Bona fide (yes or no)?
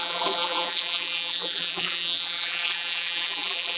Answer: no